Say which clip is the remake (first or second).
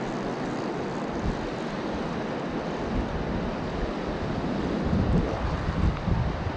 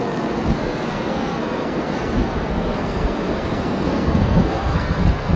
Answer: second